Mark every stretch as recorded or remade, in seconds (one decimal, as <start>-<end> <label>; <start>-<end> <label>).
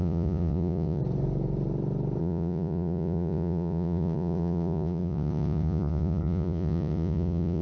0.0-1.0 remade; 1.0-2.2 recorded; 2.2-7.6 remade